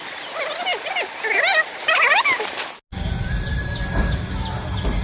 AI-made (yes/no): no